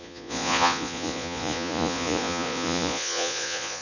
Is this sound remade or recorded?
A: remade